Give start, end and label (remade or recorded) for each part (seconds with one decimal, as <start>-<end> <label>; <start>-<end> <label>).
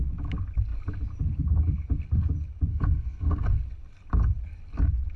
0.0-2.7 recorded; 2.7-3.6 remade; 3.6-5.2 recorded